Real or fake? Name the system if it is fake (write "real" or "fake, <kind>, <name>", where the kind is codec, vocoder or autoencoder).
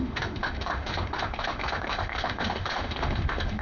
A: fake, autoencoder, DAC-VAE